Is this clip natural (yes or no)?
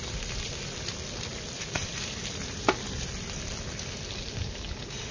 yes